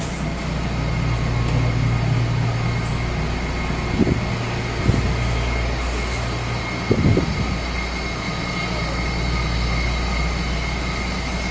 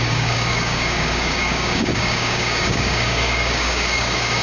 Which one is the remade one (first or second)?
second